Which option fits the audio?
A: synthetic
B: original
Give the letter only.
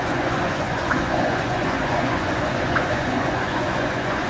A